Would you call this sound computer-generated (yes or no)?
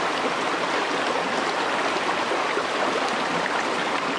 no